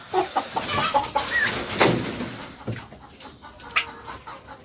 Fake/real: real